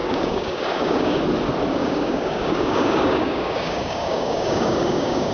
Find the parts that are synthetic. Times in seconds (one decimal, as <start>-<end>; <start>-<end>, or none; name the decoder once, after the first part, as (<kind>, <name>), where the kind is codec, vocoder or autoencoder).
0.0-1.2 (codec, DAC); 1.8-5.3